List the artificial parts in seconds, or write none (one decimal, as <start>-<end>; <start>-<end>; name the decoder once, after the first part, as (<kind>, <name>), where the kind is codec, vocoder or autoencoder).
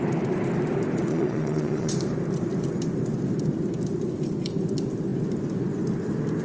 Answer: 1.1-1.9 (vocoder, Vocos)